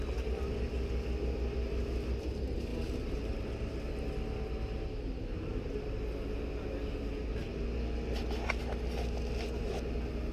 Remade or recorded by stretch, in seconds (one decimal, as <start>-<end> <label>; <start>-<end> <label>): 0.0-10.3 recorded